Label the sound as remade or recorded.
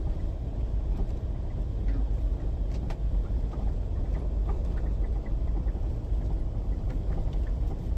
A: remade